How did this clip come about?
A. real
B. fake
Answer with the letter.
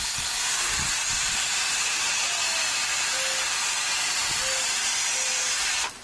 A